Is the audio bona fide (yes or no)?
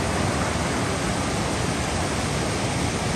yes